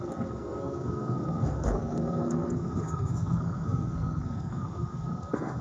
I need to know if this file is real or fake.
fake